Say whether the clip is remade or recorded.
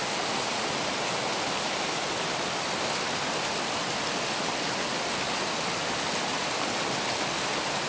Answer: recorded